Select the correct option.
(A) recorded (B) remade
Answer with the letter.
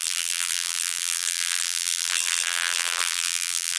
B